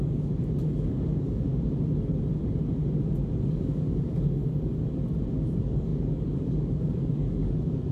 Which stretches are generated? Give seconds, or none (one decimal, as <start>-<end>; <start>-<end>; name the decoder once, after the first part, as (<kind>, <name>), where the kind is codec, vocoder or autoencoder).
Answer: 0.0-1.5 (codec, DAC); 3.5-4.4; 5.3-7.9